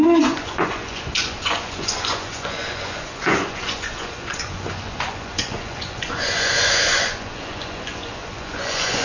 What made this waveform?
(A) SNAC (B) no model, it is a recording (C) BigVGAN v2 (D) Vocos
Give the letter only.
D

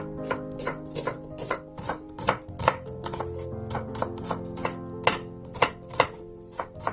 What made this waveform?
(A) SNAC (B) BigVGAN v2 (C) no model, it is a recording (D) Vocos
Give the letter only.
C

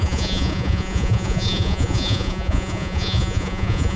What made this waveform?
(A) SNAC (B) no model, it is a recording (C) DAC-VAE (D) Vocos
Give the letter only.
D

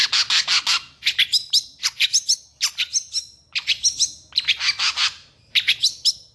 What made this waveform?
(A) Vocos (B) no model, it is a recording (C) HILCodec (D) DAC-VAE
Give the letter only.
B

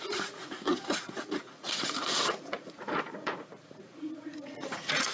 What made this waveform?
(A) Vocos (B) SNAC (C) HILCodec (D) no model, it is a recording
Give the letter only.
A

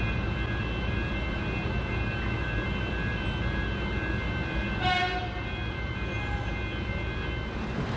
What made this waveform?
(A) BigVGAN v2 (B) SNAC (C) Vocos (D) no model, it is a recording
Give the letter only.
D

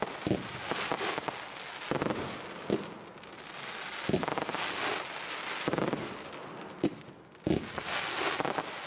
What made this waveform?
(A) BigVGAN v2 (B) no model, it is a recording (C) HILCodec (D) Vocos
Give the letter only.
B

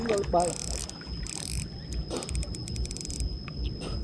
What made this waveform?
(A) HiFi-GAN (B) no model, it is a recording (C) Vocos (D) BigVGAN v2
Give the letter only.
B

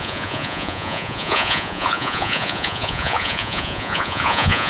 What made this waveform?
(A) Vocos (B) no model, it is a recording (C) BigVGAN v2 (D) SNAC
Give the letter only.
A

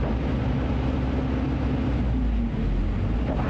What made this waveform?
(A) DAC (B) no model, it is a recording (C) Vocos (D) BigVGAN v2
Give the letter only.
B